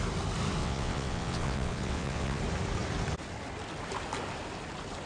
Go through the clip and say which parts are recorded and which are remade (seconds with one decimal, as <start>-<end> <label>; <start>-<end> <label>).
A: 0.0-0.6 recorded; 0.6-2.4 remade; 2.4-5.1 recorded